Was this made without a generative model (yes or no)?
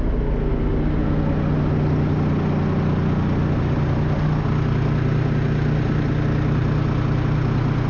yes